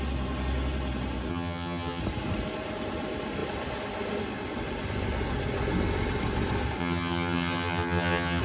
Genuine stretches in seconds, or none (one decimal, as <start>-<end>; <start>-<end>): 0.0-1.3; 2.0-6.8